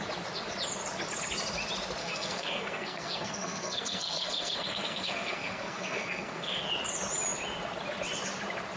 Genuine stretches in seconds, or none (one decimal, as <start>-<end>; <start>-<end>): 0.0-2.0; 6.6-8.8